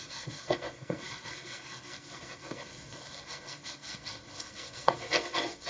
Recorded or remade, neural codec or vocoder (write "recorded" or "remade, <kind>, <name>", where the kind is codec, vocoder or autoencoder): remade, codec, SNAC